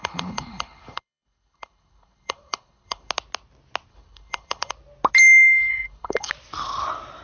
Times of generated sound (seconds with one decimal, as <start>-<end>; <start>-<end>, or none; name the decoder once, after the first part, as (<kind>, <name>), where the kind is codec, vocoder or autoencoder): 0.0-3.1 (codec, HILCodec); 3.9-4.7; 5.7-6.3